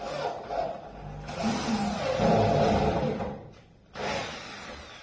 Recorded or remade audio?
recorded